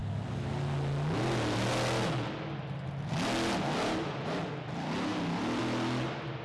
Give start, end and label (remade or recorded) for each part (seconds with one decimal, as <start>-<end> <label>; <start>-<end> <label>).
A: 0.0-6.4 recorded